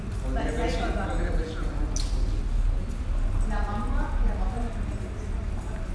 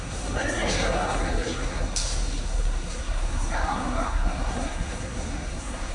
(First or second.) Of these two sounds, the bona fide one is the first